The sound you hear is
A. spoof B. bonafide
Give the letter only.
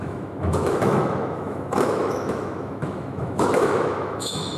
A